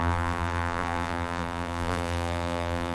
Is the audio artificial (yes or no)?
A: yes